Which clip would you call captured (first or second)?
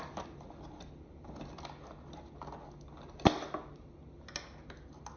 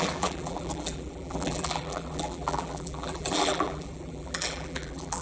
first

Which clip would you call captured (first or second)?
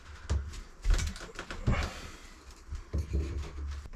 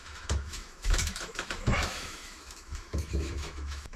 first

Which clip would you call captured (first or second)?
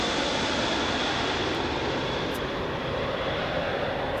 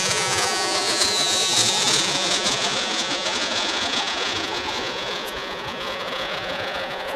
first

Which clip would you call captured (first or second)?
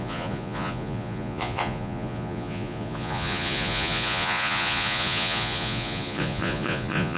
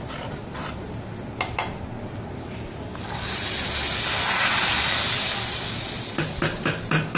second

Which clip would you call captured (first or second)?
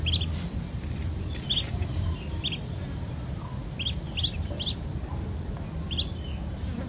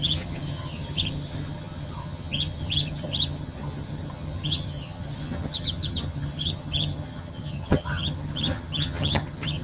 first